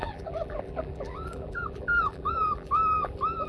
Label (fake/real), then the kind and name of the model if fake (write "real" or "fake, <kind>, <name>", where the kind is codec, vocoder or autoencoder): fake, vocoder, BigVGAN v2